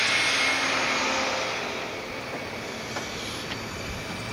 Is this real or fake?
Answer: real